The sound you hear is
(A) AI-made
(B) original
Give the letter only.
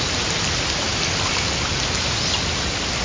B